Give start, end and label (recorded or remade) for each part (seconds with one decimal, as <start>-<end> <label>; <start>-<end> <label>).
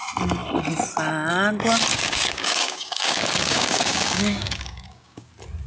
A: 0.0-1.9 recorded; 1.9-5.3 remade; 5.3-5.7 recorded